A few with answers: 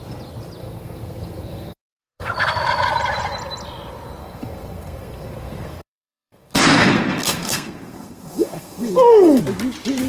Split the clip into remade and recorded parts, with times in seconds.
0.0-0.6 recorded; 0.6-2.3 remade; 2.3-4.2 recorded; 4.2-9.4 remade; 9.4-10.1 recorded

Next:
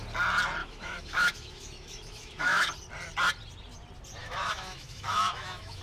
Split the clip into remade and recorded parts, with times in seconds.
0.0-0.6 recorded; 0.6-2.7 remade; 2.7-4.2 recorded; 4.2-5.8 remade